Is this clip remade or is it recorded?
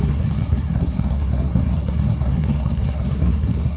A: remade